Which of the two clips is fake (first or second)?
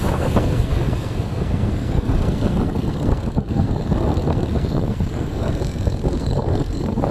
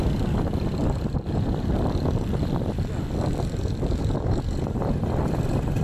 first